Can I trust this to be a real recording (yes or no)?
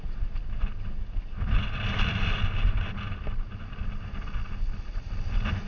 yes